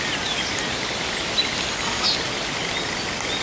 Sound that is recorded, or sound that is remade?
recorded